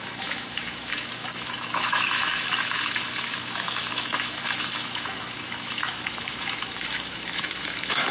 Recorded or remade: remade